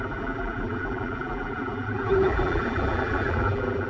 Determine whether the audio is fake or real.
fake